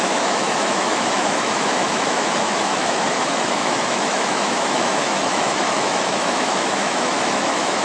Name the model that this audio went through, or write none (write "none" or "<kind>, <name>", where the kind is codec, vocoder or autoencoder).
autoencoder, DAC-VAE